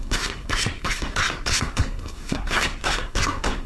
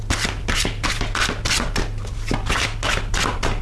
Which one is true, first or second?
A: second